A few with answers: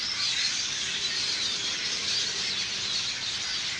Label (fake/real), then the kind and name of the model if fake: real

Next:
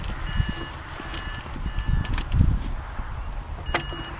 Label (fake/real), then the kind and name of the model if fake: real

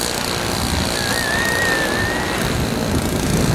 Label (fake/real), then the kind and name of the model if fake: real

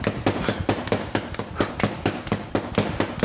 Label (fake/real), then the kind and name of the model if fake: real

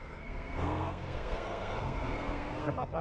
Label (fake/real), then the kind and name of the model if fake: fake, codec, SNAC